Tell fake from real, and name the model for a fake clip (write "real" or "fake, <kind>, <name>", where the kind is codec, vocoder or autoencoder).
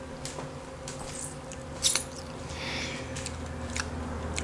real